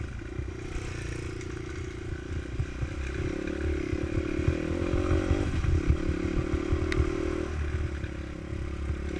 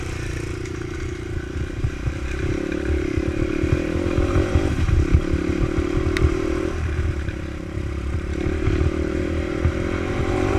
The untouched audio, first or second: first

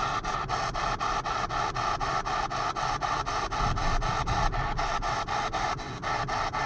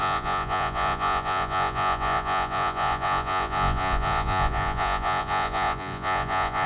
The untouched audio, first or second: first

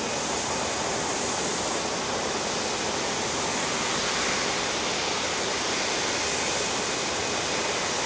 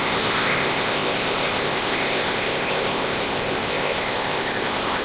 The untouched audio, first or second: first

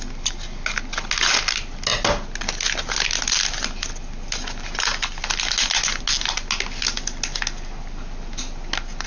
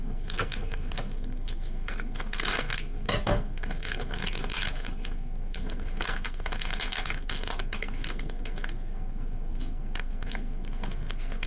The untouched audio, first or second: first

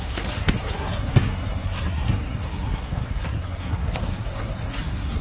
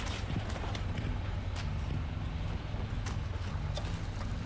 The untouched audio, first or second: second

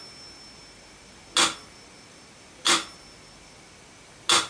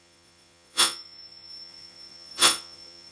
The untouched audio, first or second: first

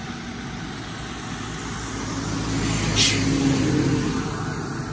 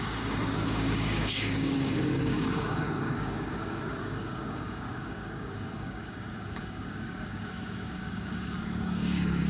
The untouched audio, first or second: first